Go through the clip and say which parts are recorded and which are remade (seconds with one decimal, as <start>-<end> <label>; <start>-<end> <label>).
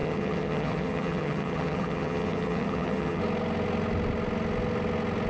0.0-3.2 remade; 3.2-5.3 recorded